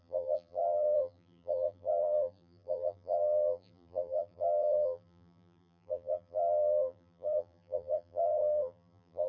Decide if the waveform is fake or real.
fake